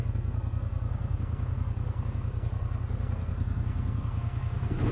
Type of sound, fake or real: fake